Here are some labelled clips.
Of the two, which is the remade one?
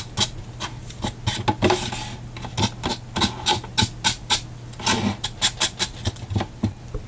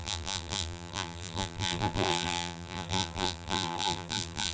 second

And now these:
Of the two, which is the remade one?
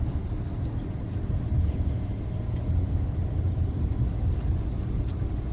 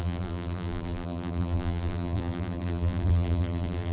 second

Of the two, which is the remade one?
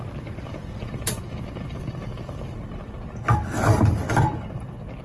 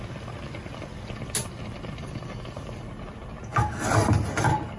first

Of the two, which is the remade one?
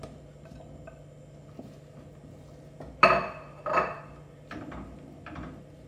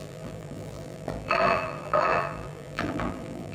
second